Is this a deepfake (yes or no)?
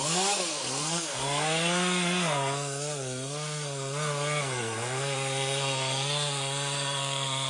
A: yes